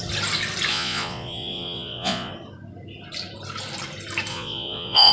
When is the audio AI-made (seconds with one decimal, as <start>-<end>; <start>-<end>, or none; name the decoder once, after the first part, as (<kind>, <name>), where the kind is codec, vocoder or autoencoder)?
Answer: 0.7-2.3 (vocoder, Vocos); 4.3-5.1